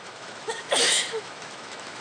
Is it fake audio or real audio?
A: fake